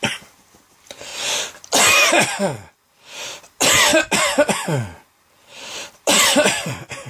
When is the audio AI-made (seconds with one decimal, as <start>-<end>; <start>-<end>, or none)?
0.0-1.1; 1.9-3.9; 5.3-7.1